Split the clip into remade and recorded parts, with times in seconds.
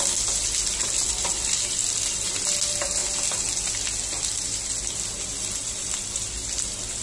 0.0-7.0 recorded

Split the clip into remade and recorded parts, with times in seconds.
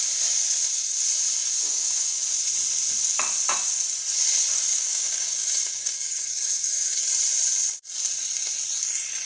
0.0-1.4 recorded; 1.4-2.4 remade; 2.4-4.7 recorded; 4.7-7.0 remade; 7.0-9.3 recorded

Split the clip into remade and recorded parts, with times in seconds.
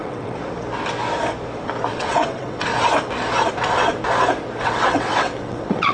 0.0-0.4 remade; 0.4-1.9 recorded; 1.9-2.7 remade; 2.7-4.6 recorded; 4.6-5.9 remade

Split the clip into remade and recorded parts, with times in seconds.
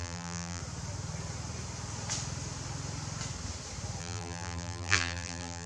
0.0-0.6 remade; 0.6-4.0 recorded; 4.0-5.7 remade